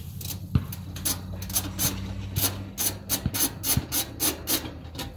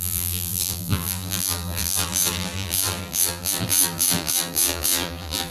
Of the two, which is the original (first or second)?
first